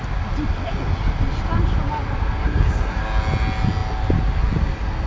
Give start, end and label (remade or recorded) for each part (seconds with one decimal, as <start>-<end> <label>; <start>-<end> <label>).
0.0-2.4 recorded; 2.4-3.0 remade; 3.0-5.1 recorded